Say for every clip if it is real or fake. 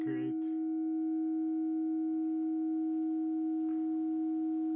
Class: real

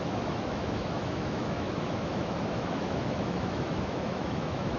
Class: fake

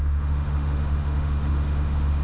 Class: fake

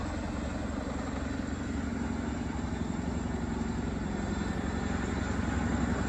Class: real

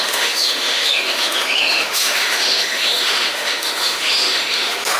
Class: fake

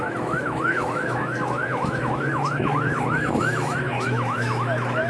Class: fake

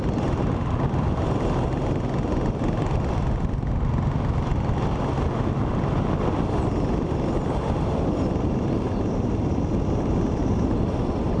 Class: real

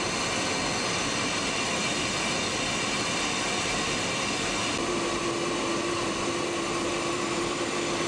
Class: real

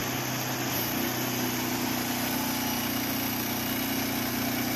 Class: real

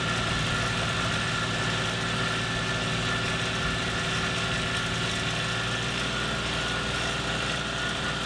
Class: real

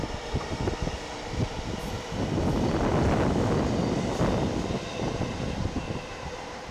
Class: real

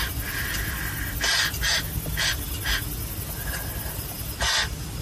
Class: real